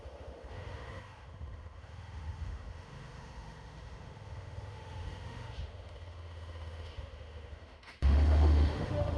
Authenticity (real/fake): fake